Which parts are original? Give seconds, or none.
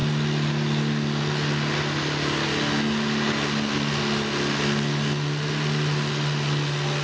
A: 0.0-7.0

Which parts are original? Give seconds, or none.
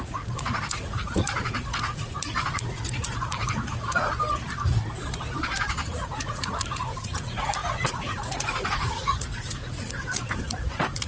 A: 4.1-5.7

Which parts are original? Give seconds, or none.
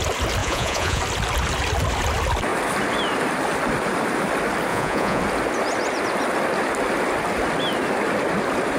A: 0.0-0.4; 1.0-4.7; 5.2-8.8